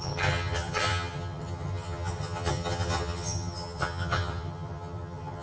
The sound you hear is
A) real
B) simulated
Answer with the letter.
B